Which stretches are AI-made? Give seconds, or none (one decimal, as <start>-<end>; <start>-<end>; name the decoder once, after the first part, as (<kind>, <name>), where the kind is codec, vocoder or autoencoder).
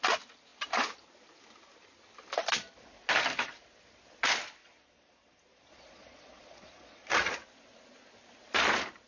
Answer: 4.6-7.3 (vocoder, Vocos)